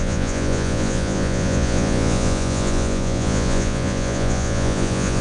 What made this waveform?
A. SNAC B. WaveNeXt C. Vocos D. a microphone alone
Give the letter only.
C